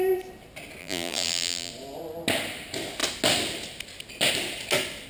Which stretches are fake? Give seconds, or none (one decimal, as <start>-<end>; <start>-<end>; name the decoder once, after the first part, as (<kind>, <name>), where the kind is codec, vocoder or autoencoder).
0.8-1.7 (vocoder, BigVGAN v2)